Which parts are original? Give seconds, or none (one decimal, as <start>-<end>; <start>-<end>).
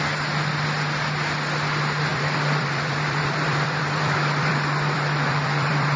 0.0-2.1